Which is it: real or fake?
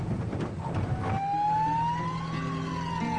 real